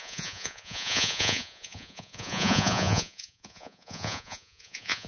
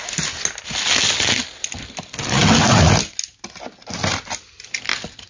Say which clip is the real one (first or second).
second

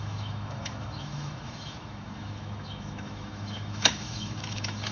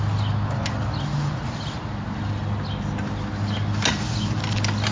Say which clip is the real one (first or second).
second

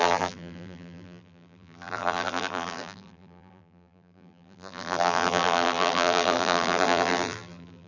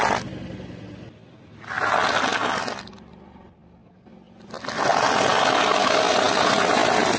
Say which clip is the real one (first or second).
second